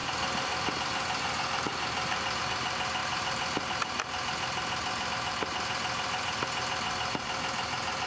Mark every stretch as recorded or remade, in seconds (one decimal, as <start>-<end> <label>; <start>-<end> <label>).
0.0-3.0 recorded; 3.0-5.1 remade; 5.1-8.1 recorded